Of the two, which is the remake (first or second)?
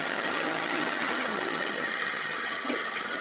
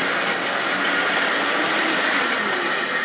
first